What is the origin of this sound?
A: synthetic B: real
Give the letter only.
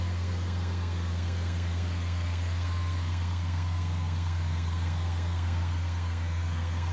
A